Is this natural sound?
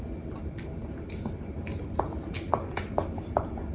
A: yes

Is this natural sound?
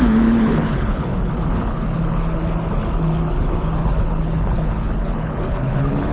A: no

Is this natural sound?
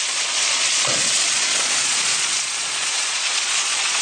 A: no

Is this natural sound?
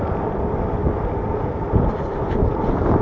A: yes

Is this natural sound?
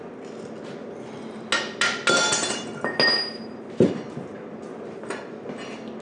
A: yes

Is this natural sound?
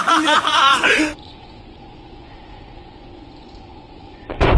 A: no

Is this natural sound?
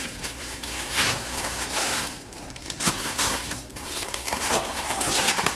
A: no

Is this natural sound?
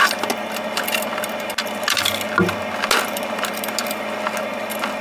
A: yes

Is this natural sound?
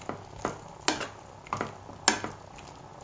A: yes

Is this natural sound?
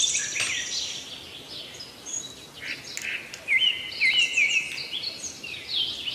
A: yes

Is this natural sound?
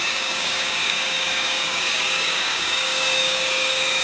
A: no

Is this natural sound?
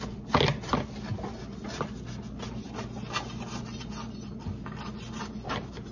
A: yes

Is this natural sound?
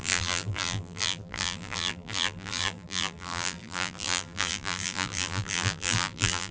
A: no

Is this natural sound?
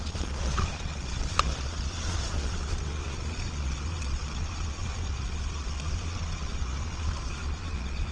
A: no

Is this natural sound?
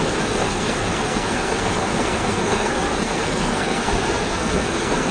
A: no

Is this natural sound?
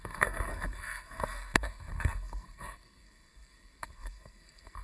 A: no